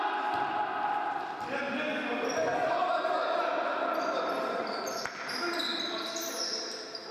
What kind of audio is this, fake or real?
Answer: real